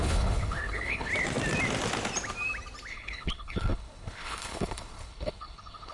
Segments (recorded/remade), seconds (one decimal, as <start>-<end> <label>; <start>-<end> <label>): 0.0-1.1 remade; 1.1-2.9 recorded; 2.9-5.9 remade